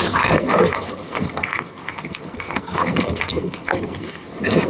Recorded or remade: remade